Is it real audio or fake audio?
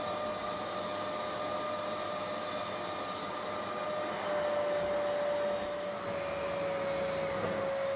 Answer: real